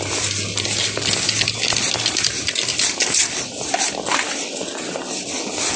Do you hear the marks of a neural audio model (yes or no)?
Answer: no